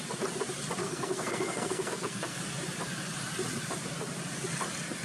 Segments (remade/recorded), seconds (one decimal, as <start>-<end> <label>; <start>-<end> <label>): 0.0-0.8 recorded; 0.8-2.4 remade; 2.4-5.0 recorded